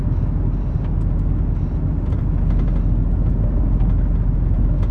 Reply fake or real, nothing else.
real